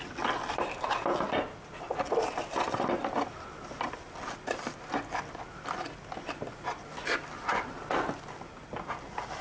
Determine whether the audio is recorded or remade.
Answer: recorded